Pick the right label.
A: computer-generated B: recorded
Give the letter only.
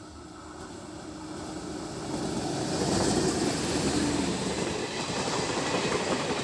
B